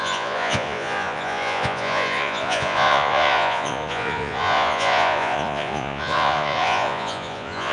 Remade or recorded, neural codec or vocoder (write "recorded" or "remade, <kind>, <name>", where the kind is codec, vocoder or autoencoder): remade, vocoder, Vocos